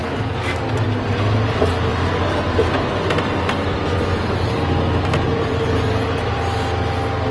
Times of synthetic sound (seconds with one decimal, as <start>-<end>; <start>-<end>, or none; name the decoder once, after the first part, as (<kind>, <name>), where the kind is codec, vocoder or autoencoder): 0.6-1.9 (vocoder, BigVGAN v2); 3.4-7.3